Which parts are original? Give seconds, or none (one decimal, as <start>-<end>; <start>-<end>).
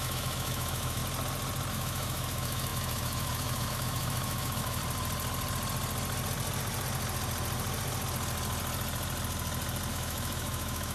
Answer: 1.0-1.7; 4.8-9.9